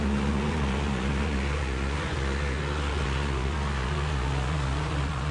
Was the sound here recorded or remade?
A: remade